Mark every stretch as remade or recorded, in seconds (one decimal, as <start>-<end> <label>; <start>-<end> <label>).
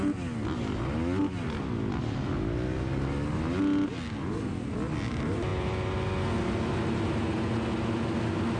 0.0-8.6 recorded